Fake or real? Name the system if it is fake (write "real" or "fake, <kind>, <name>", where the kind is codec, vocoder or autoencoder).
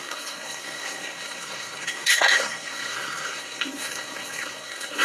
fake, codec, SNAC